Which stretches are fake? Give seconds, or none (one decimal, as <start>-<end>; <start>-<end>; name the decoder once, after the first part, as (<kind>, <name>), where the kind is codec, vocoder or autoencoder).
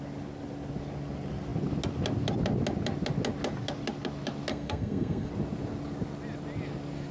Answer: 4.5-5.3 (codec, SNAC)